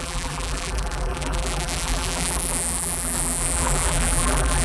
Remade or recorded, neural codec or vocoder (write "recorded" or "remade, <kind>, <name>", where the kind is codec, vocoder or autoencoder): remade, vocoder, BigVGAN v2